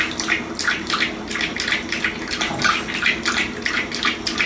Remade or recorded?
recorded